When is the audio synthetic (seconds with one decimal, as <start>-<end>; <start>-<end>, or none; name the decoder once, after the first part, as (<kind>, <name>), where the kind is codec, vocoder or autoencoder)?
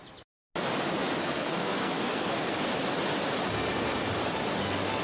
1.2-2.7 (codec, SNAC)